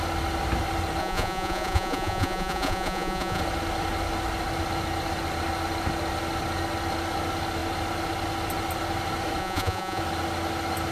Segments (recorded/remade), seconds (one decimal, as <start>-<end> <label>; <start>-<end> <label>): 0.0-1.0 recorded; 1.0-3.4 remade; 3.4-9.4 recorded; 9.4-10.0 remade; 10.0-10.9 recorded